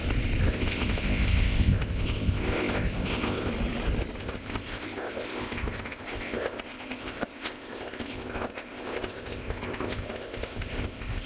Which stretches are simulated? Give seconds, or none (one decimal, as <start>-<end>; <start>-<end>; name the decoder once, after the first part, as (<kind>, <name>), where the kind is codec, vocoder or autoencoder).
0.5-3.5 (codec, ZipCodec); 4.2-11.3